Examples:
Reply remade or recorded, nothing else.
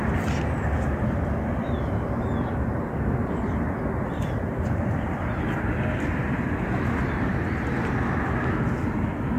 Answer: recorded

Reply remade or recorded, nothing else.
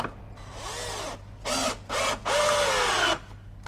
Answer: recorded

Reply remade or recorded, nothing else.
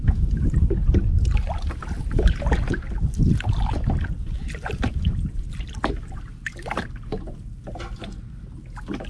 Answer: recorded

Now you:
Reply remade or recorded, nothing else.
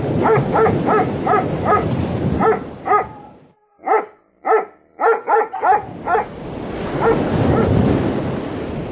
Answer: recorded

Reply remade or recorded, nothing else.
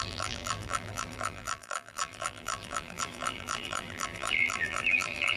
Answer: remade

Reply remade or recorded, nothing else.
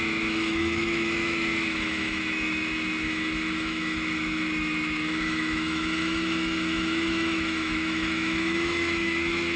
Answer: remade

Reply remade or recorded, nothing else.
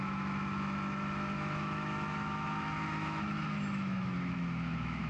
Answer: remade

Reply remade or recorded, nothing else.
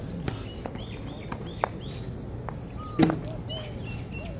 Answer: recorded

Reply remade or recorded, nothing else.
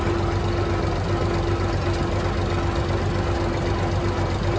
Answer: recorded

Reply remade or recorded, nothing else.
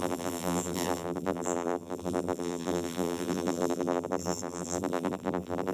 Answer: remade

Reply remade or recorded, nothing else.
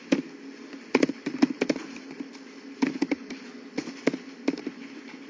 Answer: recorded